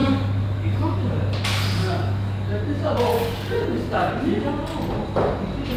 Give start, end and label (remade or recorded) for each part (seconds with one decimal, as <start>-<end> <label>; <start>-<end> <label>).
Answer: 0.0-1.2 remade; 1.2-1.8 recorded; 1.8-2.6 remade; 2.6-3.1 recorded; 3.1-4.1 remade; 4.1-5.8 recorded